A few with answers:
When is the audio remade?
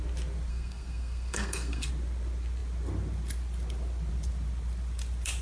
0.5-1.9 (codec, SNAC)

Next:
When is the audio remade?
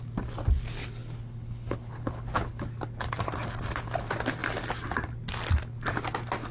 1.0-2.7 (codec, HILCodec)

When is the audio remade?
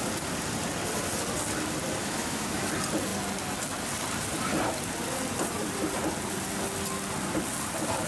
2.0-2.7 (autoencoder, DAC-VAE)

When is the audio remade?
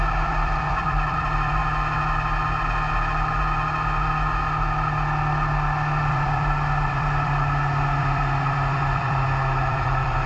0.0-1.6 (vocoder, BigVGAN v2); 6.1-10.3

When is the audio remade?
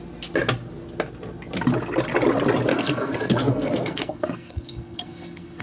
2.7-5.6 (codec, SNAC)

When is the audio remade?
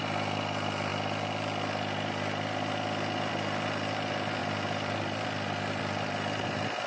none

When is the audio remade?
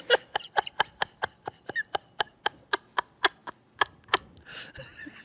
none